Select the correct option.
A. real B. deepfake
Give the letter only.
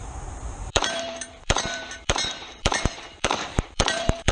B